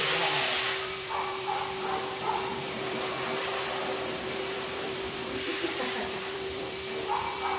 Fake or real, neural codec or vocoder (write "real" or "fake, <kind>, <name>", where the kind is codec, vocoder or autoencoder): fake, vocoder, BigVGAN v2